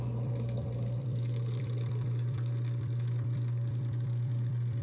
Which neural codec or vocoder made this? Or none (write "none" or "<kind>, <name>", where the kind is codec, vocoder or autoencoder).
vocoder, BigVGAN v2